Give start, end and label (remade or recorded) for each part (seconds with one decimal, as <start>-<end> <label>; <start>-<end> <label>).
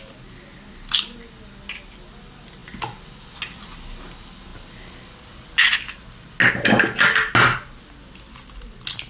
0.0-9.1 recorded